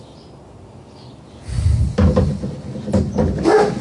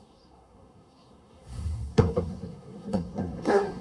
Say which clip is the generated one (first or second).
second